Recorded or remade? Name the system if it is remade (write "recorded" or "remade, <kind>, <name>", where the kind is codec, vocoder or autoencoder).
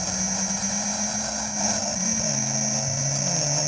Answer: recorded